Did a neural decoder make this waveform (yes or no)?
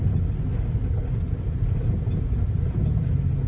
no